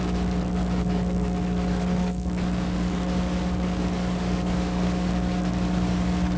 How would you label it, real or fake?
fake